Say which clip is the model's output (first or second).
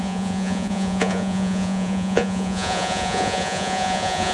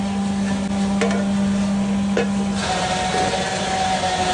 first